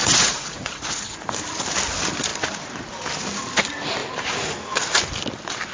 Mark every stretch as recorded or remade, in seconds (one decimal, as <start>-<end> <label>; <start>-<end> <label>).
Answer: 0.0-1.0 remade; 1.0-5.7 recorded

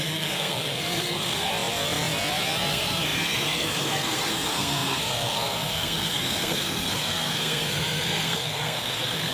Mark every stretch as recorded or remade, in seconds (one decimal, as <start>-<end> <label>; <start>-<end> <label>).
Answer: 0.0-1.5 remade; 1.5-2.7 recorded; 2.7-9.3 remade

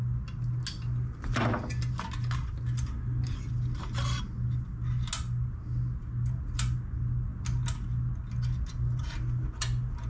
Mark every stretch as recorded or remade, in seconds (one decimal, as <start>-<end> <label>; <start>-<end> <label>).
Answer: 0.0-10.1 recorded

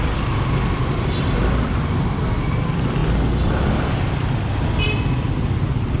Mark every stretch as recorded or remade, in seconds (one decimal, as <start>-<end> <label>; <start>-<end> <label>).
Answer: 0.0-6.0 recorded

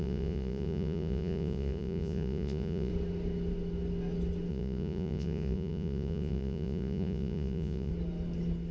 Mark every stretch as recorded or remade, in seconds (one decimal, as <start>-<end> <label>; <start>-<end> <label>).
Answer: 0.0-2.9 remade; 2.9-4.5 recorded; 4.5-7.9 remade; 7.9-8.7 recorded